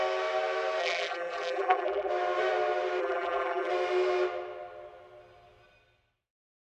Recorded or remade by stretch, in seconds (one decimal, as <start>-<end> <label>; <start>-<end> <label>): 0.0-0.8 recorded; 0.8-2.1 remade; 2.1-3.0 recorded; 3.0-3.7 remade; 3.7-6.7 recorded